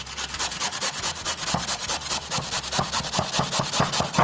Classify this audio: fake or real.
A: real